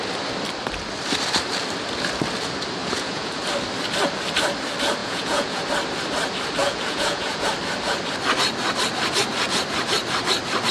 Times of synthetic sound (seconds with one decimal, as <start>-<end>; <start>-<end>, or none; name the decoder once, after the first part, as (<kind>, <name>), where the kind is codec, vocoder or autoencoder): 2.8-3.4 (vocoder, Vocos); 5.0-5.6; 6.6-7.5